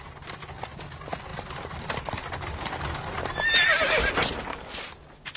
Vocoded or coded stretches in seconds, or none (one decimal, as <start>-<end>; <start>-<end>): none